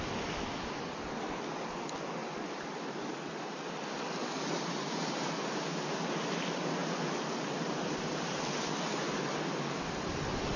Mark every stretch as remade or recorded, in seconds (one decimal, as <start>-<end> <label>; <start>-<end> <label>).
0.0-10.6 recorded